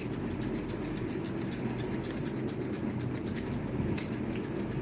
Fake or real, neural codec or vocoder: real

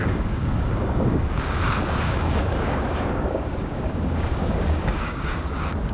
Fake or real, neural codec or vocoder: fake, codec, DAC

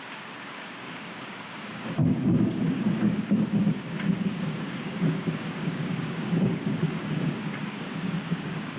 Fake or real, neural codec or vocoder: fake, codec, DAC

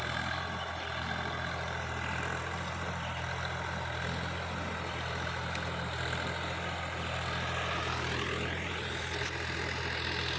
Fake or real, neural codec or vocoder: real